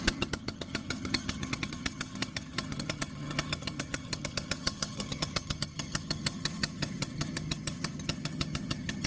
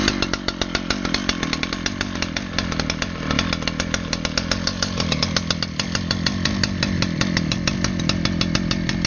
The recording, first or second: second